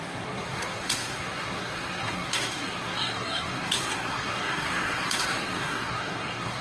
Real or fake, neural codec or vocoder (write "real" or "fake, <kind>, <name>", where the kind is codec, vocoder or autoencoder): fake, codec, SNAC